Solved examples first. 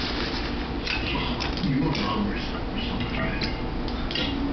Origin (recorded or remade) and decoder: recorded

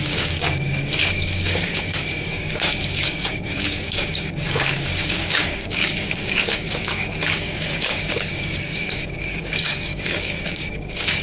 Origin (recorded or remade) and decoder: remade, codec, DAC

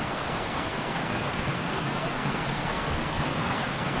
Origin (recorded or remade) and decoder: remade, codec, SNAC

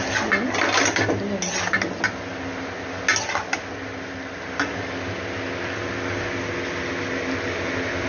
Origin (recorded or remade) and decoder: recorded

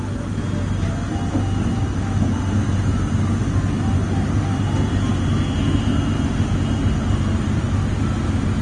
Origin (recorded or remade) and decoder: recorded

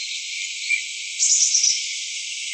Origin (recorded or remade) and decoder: recorded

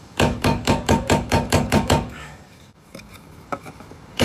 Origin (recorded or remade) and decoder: remade, codec, DAC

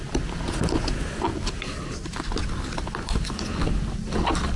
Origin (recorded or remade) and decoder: recorded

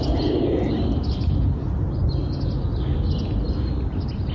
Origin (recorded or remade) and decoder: recorded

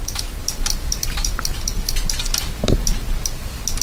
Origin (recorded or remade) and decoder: recorded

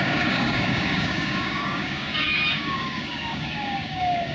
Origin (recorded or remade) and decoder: remade, codec, DAC